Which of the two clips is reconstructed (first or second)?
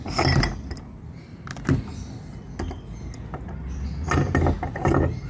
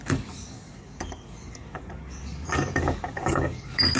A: second